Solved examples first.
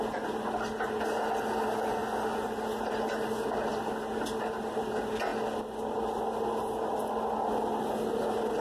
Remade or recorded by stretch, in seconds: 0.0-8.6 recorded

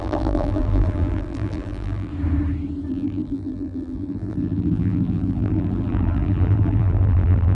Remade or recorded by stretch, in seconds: 0.0-2.1 remade; 2.1-2.9 recorded; 2.9-7.5 remade

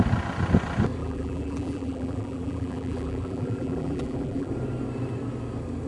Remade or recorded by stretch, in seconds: 0.0-1.0 recorded; 1.0-4.5 remade; 4.5-5.9 recorded

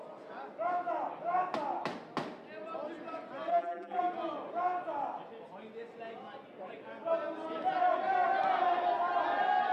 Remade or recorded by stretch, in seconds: 0.0-3.5 recorded; 3.5-4.0 remade; 4.0-9.7 recorded